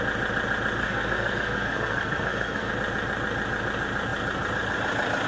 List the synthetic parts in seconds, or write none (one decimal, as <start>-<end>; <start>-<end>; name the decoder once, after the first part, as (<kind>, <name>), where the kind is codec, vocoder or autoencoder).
0.8-2.7 (codec, SNAC)